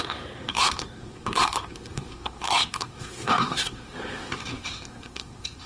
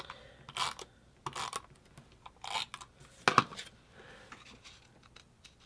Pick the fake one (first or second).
first